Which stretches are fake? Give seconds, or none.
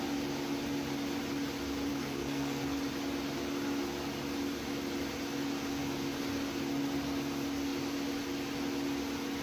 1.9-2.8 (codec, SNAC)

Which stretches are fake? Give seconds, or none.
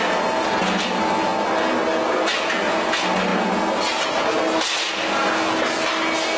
none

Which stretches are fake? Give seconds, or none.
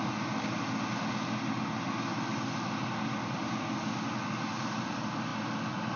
none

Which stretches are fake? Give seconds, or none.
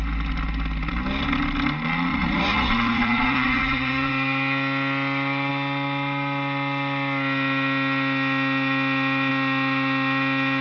2.1-4.1 (vocoder, Vocos)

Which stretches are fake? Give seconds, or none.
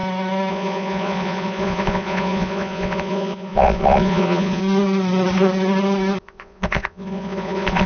0.5-4.6 (vocoder, Vocos); 6.2-7.9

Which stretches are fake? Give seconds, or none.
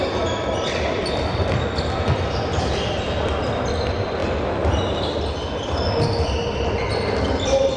none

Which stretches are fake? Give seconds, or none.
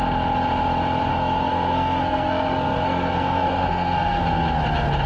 1.1-4.2 (codec, SNAC)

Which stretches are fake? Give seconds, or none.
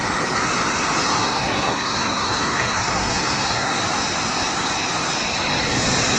1.2-3.8 (codec, SNAC)